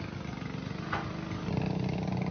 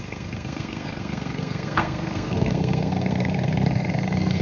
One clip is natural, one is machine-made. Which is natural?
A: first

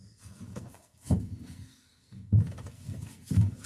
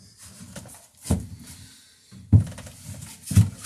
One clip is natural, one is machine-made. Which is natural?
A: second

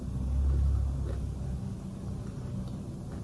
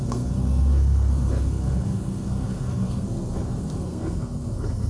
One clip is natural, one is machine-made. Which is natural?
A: first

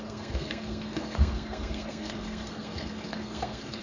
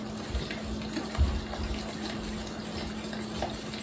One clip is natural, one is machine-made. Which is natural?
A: second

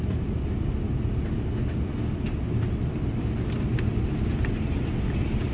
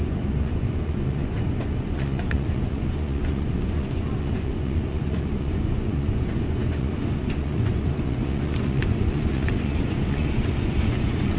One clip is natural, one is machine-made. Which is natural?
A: first